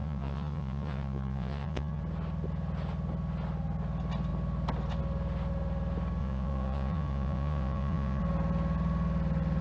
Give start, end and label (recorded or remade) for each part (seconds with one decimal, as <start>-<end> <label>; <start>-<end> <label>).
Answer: 0.0-2.0 remade; 2.0-6.2 recorded; 6.2-8.2 remade; 8.2-9.6 recorded

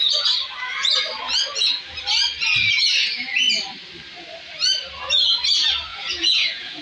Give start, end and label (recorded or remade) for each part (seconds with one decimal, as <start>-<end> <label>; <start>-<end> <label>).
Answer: 0.0-5.9 recorded; 5.9-6.8 remade

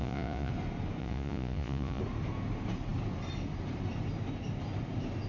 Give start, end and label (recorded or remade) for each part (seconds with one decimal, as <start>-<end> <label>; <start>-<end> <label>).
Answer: 0.0-0.5 remade; 0.5-1.0 recorded; 1.0-2.0 remade; 2.0-5.3 recorded

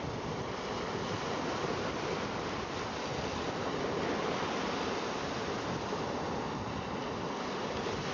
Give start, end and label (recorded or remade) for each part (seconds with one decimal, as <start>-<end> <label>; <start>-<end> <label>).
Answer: 0.0-8.1 recorded

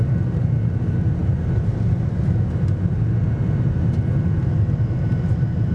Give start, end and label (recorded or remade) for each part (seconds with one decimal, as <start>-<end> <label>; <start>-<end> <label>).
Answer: 0.0-5.7 recorded

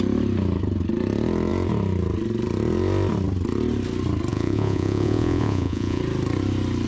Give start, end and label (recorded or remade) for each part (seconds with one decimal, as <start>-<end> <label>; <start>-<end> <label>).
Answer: 0.0-4.3 recorded; 4.3-6.0 remade; 6.0-6.9 recorded

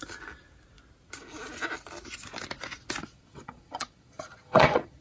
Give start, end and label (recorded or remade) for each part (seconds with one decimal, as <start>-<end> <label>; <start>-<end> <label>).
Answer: 0.0-3.0 recorded; 3.0-5.0 remade

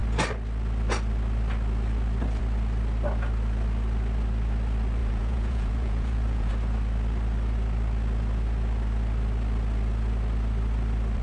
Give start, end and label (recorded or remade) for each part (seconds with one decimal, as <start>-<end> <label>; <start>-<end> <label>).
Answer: 0.0-5.0 recorded; 5.0-6.5 remade; 6.5-11.2 recorded